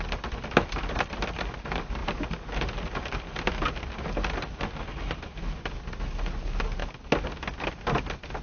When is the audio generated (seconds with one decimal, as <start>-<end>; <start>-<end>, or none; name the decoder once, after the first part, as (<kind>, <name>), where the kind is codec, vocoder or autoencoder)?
none